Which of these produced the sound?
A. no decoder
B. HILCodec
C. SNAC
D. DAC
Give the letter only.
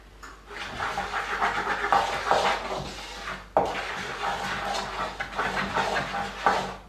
A